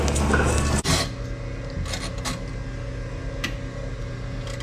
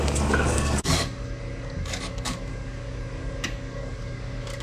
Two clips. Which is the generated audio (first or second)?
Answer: second